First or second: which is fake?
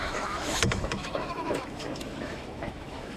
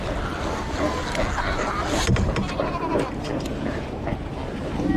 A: first